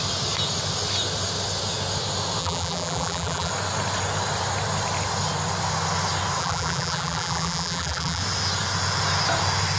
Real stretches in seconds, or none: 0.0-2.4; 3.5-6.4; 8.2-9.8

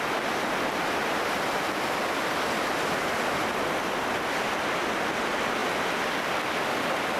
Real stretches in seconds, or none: 0.0-7.2

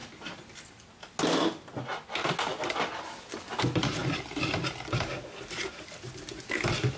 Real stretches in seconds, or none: 0.0-7.0

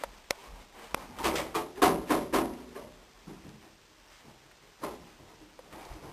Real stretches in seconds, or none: 0.0-6.1

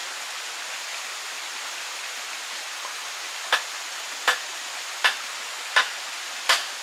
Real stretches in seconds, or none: 0.0-6.8